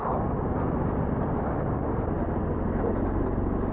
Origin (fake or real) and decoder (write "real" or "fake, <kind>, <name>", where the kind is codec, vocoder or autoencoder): real